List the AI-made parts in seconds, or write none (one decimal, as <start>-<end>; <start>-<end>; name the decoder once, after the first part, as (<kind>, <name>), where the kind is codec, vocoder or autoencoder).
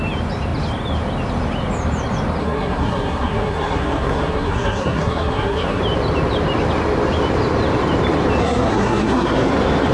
2.4-5.8 (codec, SNAC); 8.4-9.5